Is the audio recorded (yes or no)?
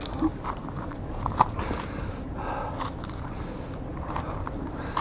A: no